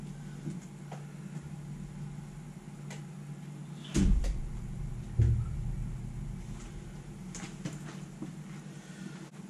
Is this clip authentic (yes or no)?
yes